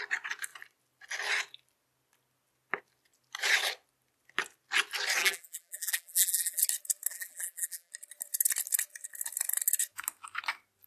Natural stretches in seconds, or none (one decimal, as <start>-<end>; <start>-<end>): 0.0-5.2; 6.6-7.1; 7.9-10.9